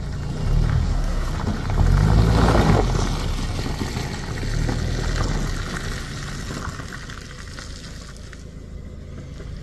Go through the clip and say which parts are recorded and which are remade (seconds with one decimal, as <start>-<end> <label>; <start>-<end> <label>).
0.0-0.7 recorded; 0.7-1.3 remade; 1.3-9.6 recorded